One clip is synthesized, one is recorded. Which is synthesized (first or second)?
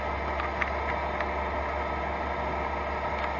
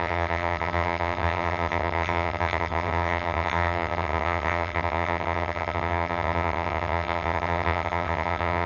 second